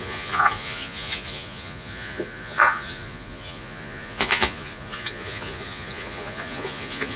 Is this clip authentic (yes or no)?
no